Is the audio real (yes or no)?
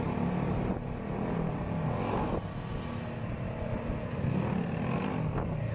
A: yes